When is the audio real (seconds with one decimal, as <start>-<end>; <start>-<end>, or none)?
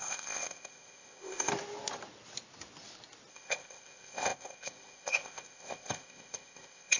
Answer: 1.5-3.3